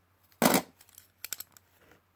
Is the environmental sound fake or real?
real